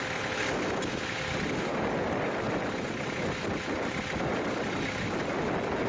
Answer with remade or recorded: recorded